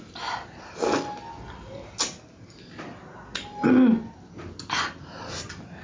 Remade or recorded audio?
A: recorded